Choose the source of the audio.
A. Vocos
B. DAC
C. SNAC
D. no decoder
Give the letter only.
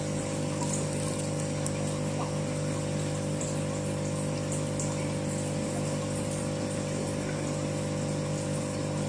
D